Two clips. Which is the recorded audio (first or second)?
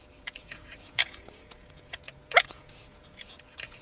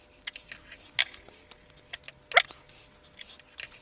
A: second